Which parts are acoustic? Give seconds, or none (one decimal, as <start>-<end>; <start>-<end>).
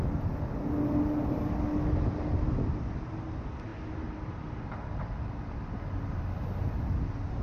0.0-7.4